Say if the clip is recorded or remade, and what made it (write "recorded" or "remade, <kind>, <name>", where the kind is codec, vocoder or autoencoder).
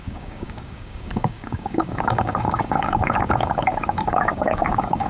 remade, codec, DAC